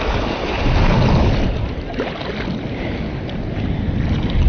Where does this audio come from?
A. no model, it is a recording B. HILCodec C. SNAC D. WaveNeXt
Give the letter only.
A